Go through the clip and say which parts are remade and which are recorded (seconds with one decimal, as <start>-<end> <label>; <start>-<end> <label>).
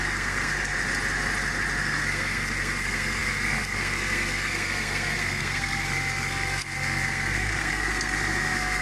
0.0-0.7 remade; 0.7-1.8 recorded; 1.8-8.8 remade